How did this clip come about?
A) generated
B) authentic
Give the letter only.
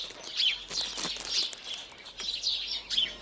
B